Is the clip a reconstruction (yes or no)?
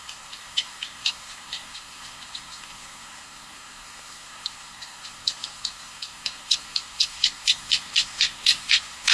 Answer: yes